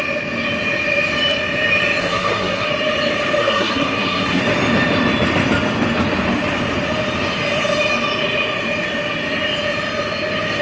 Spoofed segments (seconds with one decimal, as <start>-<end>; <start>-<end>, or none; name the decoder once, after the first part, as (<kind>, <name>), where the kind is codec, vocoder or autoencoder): 2.0-2.7 (codec, SNAC); 3.4-4.4